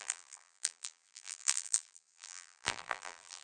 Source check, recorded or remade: remade